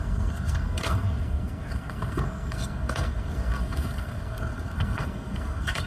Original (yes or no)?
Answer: no